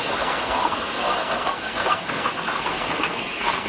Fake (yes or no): yes